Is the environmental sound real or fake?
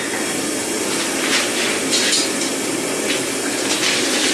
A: real